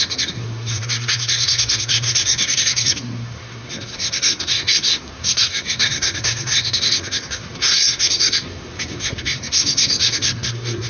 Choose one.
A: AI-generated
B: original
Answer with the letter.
A